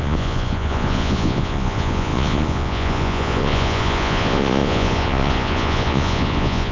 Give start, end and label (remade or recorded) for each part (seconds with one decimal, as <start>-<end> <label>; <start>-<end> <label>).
0.0-6.7 remade